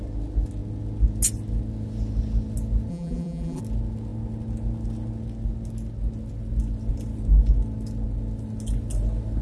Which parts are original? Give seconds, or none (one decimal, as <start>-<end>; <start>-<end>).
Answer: 0.0-2.9; 3.6-9.4